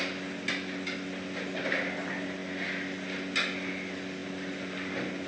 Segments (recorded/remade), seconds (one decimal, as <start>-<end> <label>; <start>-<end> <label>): 0.0-5.3 recorded